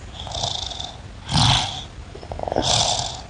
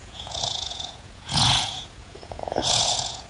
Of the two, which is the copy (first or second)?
second